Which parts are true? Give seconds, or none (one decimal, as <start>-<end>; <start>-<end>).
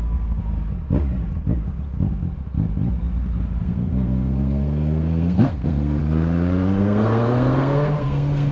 0.4-3.6; 6.0-6.8